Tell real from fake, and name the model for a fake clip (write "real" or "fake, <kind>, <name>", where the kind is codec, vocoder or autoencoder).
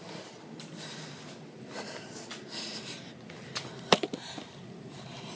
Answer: real